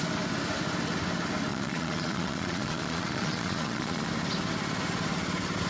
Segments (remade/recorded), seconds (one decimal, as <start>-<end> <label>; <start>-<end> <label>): 0.0-1.5 recorded; 1.5-4.1 remade; 4.1-5.7 recorded